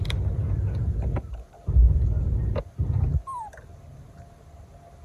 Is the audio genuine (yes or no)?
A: yes